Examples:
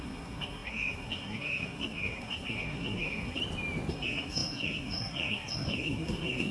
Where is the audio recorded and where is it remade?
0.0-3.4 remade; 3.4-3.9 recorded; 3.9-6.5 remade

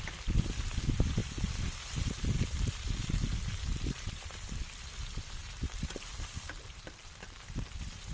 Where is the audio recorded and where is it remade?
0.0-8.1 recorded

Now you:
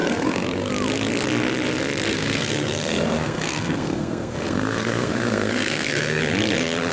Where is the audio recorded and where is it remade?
0.0-0.7 remade; 0.7-2.1 recorded; 2.1-6.2 remade; 6.2-6.9 recorded

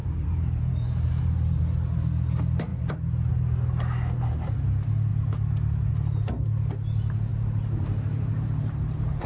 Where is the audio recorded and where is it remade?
0.0-1.6 remade; 1.6-7.3 recorded; 7.3-9.3 remade

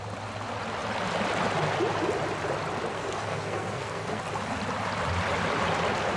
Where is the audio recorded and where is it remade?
0.0-2.9 recorded; 2.9-4.2 remade; 4.2-6.2 recorded

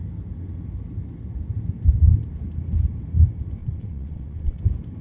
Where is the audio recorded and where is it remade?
0.0-3.6 recorded; 3.6-4.6 remade; 4.6-5.0 recorded

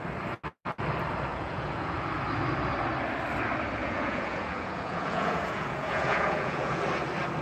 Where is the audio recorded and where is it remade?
0.0-1.3 recorded; 1.3-2.0 remade; 2.0-3.8 recorded; 3.8-6.8 remade; 6.8-7.4 recorded